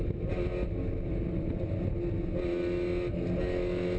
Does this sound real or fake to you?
real